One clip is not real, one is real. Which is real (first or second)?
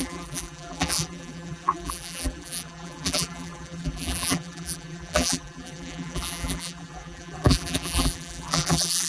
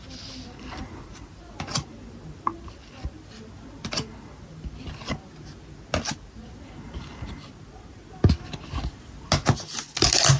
second